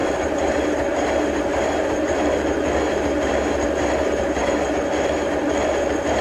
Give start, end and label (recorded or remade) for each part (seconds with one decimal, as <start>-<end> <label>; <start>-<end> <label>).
0.0-6.2 remade